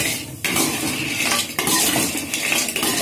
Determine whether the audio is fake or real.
real